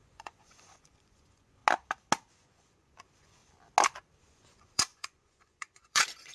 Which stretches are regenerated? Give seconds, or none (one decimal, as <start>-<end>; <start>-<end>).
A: 0.0-1.6; 2.3-3.4; 4.2-6.3